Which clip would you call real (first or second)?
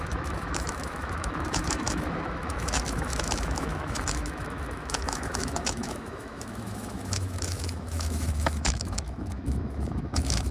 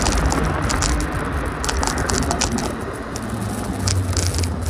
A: second